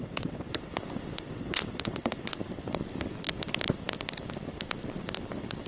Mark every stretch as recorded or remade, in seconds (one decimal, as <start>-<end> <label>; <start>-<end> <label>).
0.0-0.7 remade; 0.7-1.2 recorded; 1.2-2.1 remade; 2.1-5.7 recorded